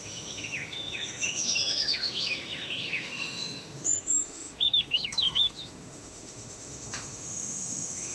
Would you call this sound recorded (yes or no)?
no